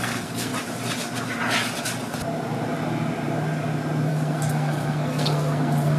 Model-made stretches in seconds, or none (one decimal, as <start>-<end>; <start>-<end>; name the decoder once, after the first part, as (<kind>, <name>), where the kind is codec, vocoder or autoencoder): 0.0-0.5 (codec, SNAC); 4.1-6.0